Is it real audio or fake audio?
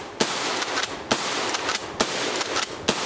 real